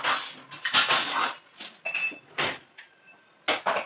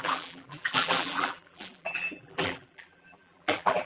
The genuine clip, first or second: first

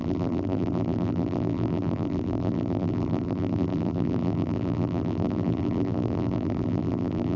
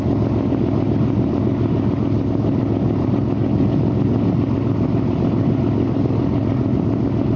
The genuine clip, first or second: second